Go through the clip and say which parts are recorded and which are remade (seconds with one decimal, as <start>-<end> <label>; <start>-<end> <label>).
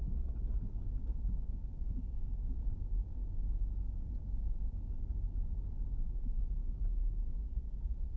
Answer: 0.0-8.2 recorded